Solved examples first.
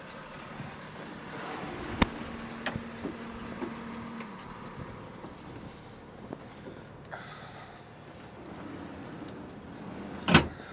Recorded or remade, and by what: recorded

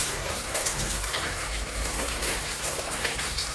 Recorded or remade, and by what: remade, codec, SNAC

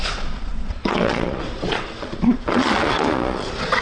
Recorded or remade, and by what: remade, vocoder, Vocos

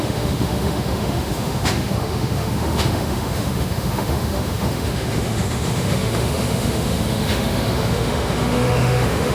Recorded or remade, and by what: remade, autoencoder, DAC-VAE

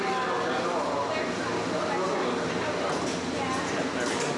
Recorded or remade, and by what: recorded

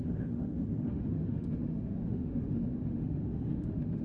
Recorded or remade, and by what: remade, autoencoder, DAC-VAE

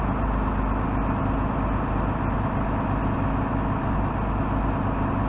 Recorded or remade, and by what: recorded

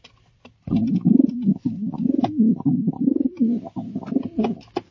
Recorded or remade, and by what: recorded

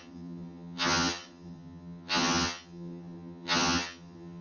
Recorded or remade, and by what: remade, vocoder, HiFi-GAN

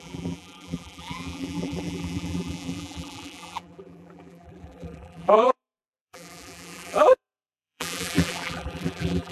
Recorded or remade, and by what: remade, vocoder, BigVGAN v2